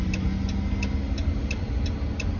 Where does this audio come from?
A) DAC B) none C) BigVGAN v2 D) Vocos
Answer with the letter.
B